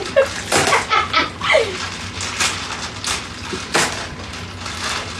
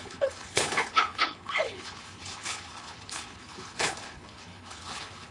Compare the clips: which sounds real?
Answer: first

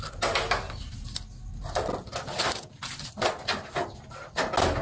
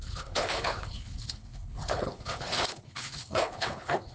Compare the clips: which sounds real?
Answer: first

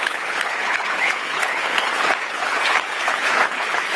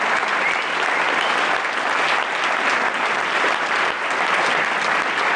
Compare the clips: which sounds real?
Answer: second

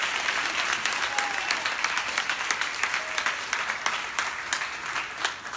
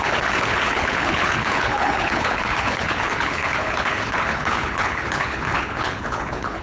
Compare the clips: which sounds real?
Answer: first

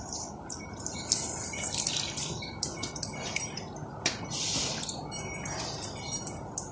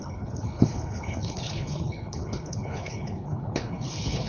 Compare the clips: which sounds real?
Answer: first